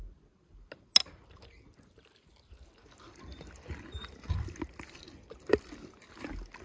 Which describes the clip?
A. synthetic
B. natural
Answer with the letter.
B